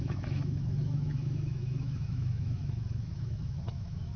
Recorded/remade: remade